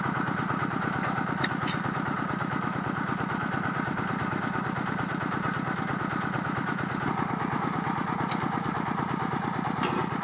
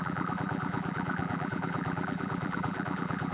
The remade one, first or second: second